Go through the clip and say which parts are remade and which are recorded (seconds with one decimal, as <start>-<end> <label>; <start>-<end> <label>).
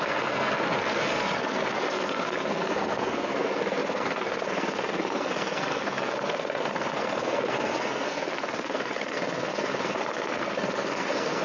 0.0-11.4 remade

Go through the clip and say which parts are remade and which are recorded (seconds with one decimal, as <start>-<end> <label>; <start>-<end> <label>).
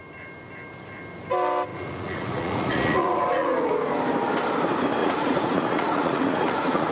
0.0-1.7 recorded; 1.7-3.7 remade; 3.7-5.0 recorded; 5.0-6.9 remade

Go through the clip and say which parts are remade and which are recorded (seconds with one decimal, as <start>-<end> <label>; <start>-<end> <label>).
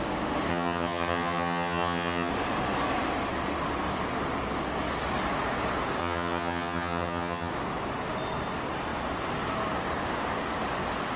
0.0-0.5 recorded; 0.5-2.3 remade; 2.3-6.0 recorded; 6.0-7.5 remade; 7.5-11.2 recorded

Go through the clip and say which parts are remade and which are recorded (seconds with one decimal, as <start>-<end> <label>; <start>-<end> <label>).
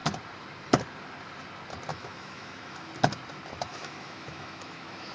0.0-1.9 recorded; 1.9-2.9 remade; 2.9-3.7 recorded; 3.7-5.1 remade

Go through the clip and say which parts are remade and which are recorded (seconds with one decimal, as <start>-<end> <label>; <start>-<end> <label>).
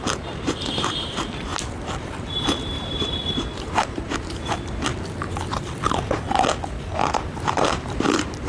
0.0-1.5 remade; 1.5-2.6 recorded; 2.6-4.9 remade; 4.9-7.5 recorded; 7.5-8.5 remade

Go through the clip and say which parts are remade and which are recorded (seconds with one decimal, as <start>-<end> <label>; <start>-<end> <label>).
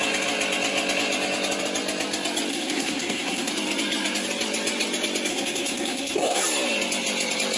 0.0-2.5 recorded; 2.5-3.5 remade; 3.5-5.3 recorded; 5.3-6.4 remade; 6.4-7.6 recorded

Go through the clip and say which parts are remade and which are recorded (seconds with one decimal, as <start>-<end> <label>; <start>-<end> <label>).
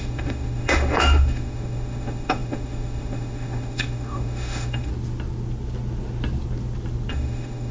0.0-4.9 remade; 4.9-7.1 recorded; 7.1-7.7 remade